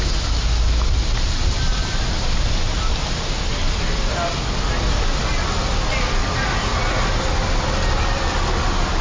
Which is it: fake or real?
real